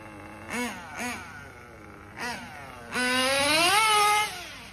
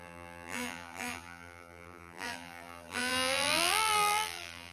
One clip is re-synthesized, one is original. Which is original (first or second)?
first